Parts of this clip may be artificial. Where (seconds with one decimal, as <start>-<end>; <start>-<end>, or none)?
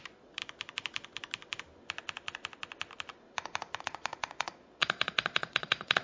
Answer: 0.0-0.4; 3.8-6.0